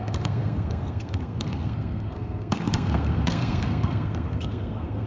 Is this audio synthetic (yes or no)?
yes